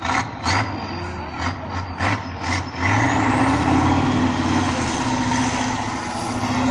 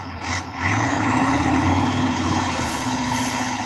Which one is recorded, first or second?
first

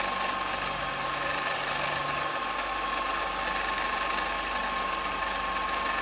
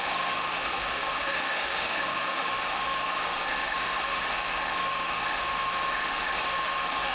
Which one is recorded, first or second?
first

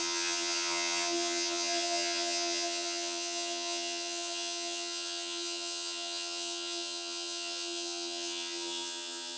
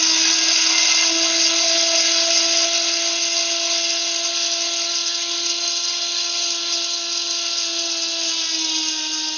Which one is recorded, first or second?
second